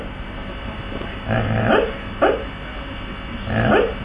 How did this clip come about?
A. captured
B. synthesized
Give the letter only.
A